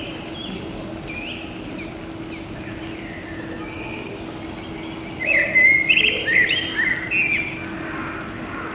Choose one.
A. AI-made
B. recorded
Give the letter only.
B